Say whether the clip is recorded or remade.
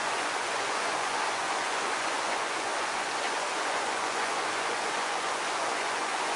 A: remade